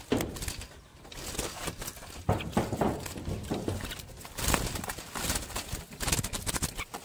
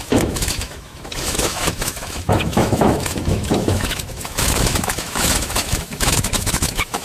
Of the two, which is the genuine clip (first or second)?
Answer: first